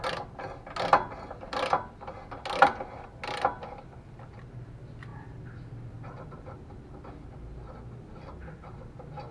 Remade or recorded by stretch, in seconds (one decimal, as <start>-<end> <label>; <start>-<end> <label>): 0.0-5.1 recorded; 5.1-6.9 remade; 6.9-8.4 recorded; 8.4-9.3 remade